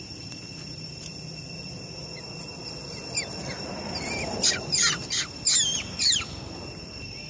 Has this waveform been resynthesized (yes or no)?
no